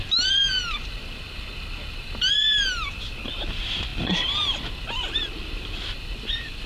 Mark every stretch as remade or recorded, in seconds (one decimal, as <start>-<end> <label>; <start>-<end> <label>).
0.0-6.7 recorded